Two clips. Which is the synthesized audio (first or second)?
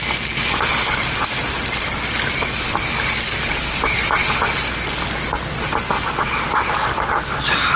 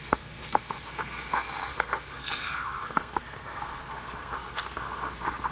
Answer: second